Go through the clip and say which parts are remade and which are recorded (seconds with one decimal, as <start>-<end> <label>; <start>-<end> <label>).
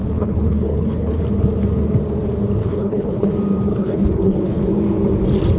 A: 0.0-1.2 remade; 1.2-2.6 recorded; 2.6-3.3 remade; 3.3-3.7 recorded; 3.7-4.6 remade; 4.6-5.6 recorded